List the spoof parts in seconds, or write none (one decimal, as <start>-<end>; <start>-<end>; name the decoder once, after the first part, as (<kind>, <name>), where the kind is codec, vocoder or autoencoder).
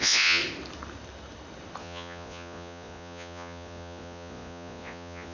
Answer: 0.0-0.4 (vocoder, Vocos); 1.8-5.3